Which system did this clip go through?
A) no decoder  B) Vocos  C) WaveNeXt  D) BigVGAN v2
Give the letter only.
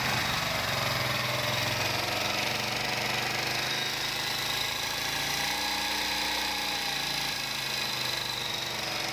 A